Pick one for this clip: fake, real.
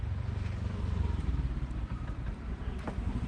fake